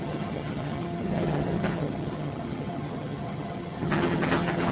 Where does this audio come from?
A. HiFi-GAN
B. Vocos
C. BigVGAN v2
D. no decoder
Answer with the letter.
A